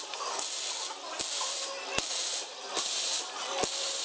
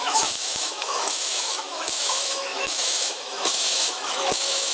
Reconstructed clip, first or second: second